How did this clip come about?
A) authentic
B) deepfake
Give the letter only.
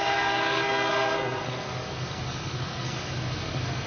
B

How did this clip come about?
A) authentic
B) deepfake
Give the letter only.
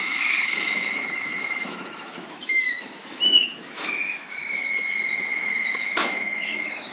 B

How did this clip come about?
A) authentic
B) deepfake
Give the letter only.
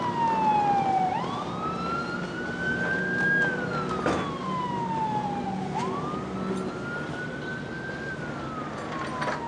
A